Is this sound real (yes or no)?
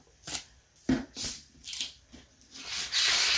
no